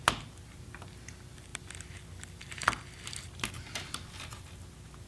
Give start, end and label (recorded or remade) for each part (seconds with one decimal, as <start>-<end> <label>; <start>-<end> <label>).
0.0-5.1 recorded